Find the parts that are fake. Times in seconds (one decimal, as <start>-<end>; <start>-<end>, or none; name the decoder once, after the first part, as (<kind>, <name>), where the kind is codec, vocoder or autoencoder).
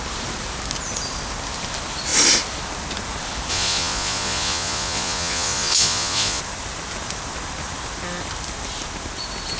3.5-6.4 (vocoder, Vocos)